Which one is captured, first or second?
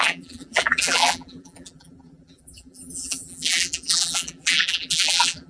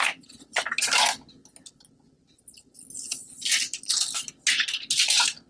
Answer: second